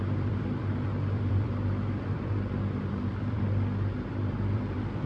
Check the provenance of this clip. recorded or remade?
remade